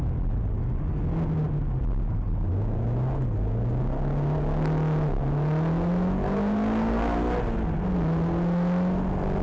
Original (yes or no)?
yes